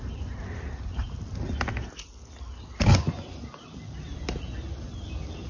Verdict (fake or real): real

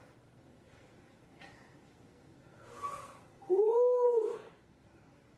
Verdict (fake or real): fake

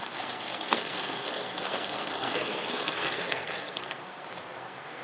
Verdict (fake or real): fake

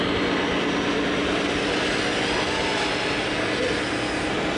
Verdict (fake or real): real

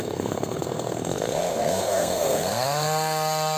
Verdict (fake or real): fake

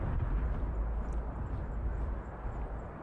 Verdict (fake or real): real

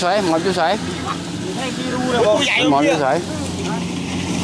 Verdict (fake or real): real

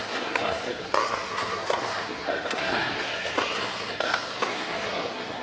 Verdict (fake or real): fake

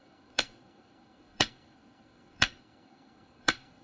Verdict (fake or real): fake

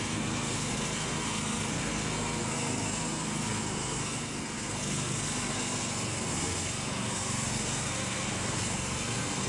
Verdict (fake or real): fake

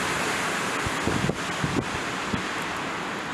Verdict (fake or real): real